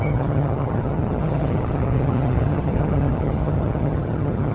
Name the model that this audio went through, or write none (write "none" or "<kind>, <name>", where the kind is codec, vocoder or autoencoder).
vocoder, HiFi-GAN